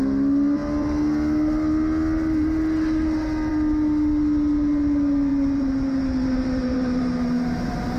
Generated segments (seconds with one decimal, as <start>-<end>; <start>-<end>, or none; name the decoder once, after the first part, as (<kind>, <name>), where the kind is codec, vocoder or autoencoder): 5.3-8.0 (vocoder, BigVGAN v2)